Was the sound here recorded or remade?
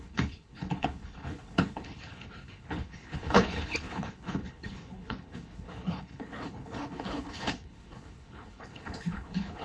remade